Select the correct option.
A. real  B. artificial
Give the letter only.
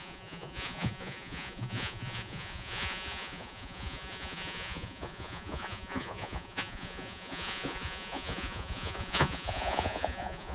B